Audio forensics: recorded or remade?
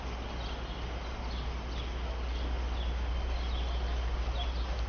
recorded